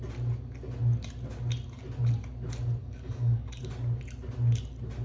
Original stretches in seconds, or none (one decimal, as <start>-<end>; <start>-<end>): 0.0-2.8; 3.6-5.0